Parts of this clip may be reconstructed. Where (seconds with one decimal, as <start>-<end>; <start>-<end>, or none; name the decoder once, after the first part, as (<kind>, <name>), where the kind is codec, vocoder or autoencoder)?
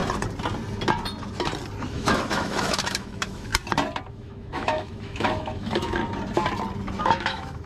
1.9-3.5 (autoencoder, DAC-VAE); 4.1-6.0; 7.0-7.7